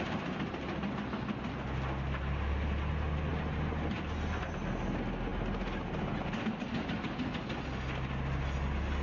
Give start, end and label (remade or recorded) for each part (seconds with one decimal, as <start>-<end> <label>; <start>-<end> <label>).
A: 0.0-9.0 recorded